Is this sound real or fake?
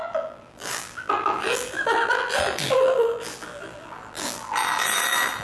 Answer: fake